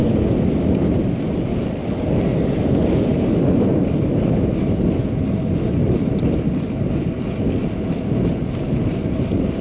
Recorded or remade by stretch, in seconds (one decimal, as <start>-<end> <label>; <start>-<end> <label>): 0.0-9.6 recorded